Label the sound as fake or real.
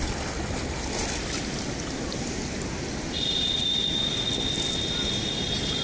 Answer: real